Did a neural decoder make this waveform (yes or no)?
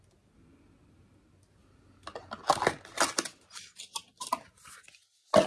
no